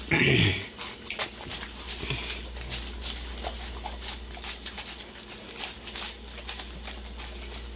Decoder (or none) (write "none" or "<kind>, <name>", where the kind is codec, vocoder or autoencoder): none